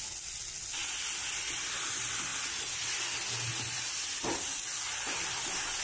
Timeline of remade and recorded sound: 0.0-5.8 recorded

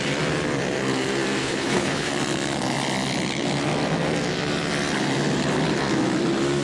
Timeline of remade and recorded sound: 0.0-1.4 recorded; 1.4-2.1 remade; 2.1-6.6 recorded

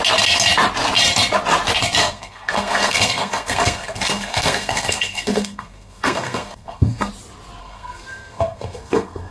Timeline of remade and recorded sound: 0.0-2.0 recorded; 2.0-7.1 remade; 7.1-7.6 recorded; 7.6-9.3 remade

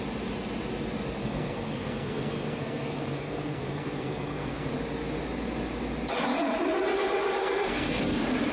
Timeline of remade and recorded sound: 0.0-1.2 recorded; 1.2-4.7 remade; 4.7-7.4 recorded; 7.4-8.0 remade; 8.0-8.5 recorded